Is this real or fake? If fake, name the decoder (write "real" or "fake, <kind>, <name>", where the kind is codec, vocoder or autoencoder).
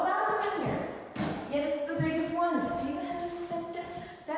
real